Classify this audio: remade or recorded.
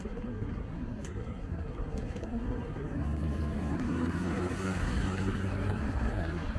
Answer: remade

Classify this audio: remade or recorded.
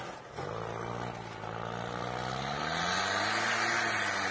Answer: recorded